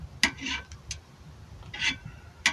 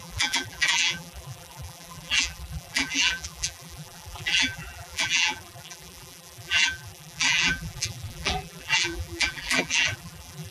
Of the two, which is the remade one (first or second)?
second